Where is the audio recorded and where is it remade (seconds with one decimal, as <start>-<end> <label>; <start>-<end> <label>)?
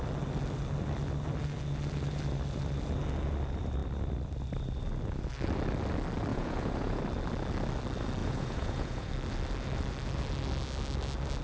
0.0-6.3 recorded; 6.3-7.0 remade; 7.0-8.2 recorded; 8.2-9.1 remade; 9.1-11.4 recorded